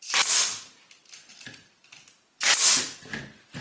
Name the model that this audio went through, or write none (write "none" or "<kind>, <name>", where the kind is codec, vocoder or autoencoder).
none